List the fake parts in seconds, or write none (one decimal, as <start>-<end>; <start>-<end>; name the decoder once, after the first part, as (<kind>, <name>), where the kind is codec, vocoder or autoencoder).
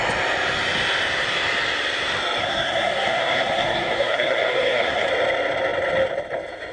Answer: 2.4-5.1 (codec, SNAC)